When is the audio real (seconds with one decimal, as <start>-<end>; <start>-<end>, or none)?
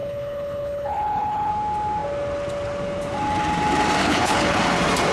1.5-4.0; 4.6-5.1